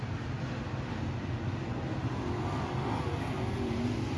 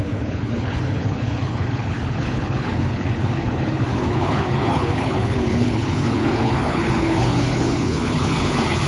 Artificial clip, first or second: second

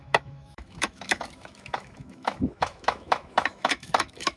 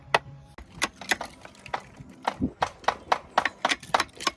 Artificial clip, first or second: first